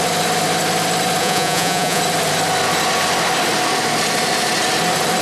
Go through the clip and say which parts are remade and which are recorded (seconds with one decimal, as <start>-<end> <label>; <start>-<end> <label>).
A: 0.0-1.2 recorded; 1.2-2.0 remade; 2.0-5.2 recorded